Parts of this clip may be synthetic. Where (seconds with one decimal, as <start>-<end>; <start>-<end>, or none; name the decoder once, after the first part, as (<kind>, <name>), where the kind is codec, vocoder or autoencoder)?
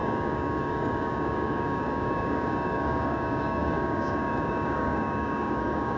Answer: 0.0-6.0 (codec, DAC)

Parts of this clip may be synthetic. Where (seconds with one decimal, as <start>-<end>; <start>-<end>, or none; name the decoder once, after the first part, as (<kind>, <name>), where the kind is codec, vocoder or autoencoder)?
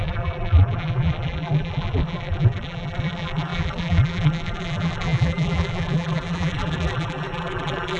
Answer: 0.0-8.0 (vocoder, BigVGAN v2)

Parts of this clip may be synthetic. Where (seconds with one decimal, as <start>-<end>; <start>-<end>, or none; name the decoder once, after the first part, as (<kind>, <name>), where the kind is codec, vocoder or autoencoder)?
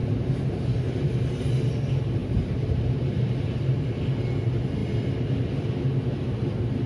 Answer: 2.2-3.5 (vocoder, BigVGAN v2)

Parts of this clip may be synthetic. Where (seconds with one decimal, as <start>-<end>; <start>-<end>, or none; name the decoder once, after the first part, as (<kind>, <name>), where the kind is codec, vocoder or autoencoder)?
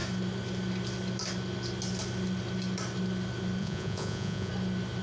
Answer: 3.6-4.5 (vocoder, Vocos)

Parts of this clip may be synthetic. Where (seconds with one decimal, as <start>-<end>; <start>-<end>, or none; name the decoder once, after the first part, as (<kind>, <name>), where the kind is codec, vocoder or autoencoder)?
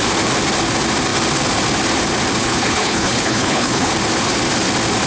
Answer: 2.4-3.9 (codec, HILCodec)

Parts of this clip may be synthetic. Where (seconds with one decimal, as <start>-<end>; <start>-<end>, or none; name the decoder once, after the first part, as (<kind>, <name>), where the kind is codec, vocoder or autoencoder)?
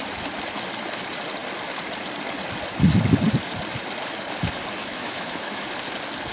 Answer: 4.8-5.6 (autoencoder, DAC-VAE)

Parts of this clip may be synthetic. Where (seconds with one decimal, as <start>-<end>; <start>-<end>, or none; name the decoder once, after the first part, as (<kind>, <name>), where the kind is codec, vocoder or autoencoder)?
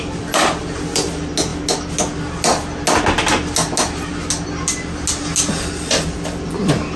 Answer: none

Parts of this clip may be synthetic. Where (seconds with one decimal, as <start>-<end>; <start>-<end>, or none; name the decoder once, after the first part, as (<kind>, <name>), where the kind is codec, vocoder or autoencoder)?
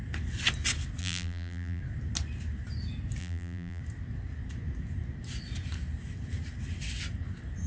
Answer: 1.0-1.8 (vocoder, BigVGAN v2); 3.2-3.8